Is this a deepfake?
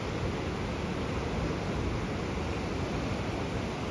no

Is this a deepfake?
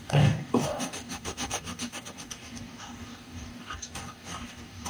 yes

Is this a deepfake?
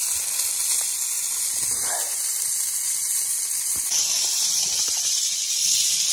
no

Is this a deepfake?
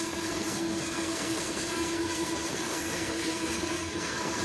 yes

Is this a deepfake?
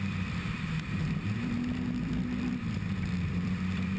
yes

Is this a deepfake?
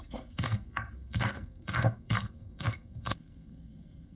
yes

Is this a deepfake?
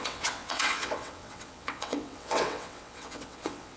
yes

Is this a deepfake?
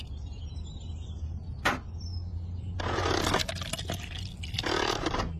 no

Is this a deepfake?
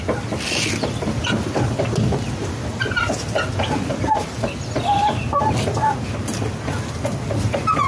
no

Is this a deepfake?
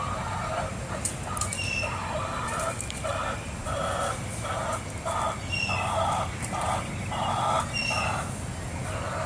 no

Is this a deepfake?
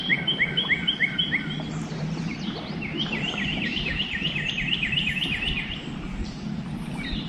yes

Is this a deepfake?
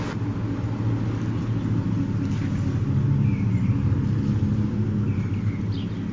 no